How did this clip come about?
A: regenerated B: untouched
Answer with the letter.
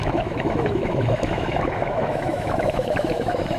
A